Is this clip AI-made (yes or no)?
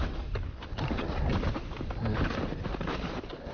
no